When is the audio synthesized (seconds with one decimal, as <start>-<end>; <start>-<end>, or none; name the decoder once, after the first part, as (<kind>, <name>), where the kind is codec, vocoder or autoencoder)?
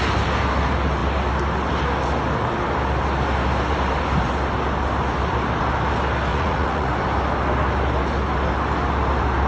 6.3-6.9 (vocoder, Vocos)